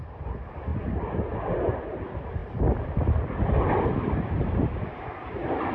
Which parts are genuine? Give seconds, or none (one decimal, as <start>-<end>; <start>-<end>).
0.0-5.7